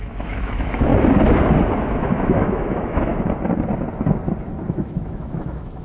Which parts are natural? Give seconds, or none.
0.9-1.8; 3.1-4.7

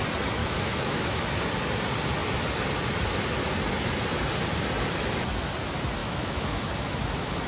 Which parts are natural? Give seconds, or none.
0.0-0.4; 1.2-6.0

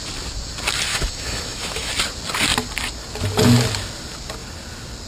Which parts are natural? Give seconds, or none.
0.0-0.9; 1.9-5.1

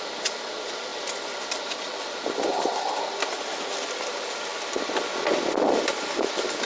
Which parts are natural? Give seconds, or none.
0.0-6.7